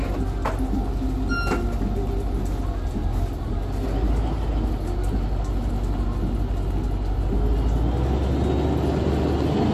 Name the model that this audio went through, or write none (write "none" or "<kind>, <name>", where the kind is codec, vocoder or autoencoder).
none